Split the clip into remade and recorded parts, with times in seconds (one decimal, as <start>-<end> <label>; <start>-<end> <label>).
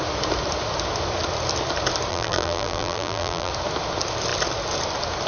0.0-2.1 recorded; 2.1-3.5 remade; 3.5-5.3 recorded